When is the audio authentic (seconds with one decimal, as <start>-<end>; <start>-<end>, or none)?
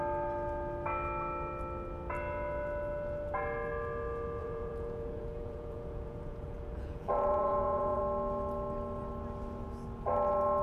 0.0-4.4; 8.0-10.6